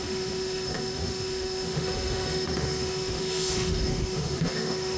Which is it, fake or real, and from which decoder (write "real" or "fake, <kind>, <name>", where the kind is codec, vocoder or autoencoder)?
fake, autoencoder, DAC-VAE